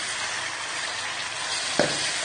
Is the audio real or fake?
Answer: real